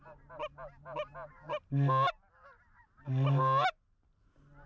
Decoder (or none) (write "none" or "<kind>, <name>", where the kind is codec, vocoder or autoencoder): none